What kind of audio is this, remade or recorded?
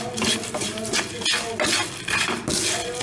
recorded